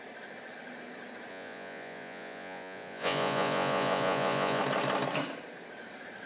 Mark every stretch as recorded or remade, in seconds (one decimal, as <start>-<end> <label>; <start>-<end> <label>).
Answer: 0.0-1.3 recorded; 1.3-4.6 remade; 4.6-6.3 recorded